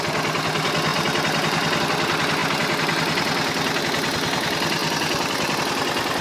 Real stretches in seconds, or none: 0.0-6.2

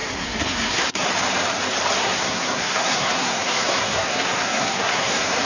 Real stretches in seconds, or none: 1.1-2.0

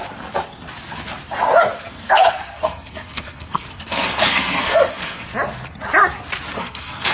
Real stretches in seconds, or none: 0.0-1.8; 5.3-6.6

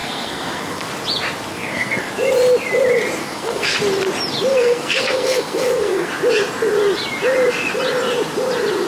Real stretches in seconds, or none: 0.9-1.5; 2.1-3.2; 3.8-4.5; 6.1-8.9